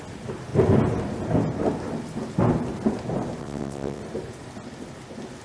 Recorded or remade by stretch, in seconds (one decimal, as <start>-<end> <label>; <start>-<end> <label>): 0.0-3.4 recorded; 3.4-4.0 remade; 4.0-5.4 recorded